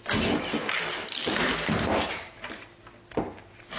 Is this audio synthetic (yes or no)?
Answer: no